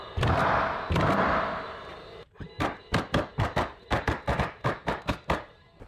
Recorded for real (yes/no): yes